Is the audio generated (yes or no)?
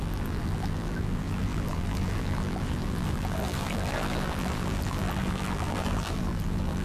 yes